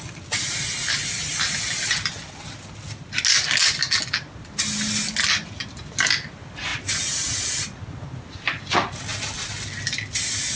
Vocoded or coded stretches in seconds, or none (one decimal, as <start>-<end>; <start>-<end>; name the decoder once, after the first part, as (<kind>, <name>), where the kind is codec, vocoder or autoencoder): none